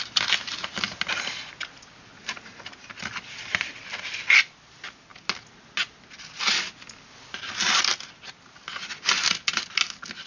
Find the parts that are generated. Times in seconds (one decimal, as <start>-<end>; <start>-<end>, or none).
none